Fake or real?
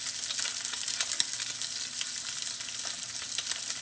real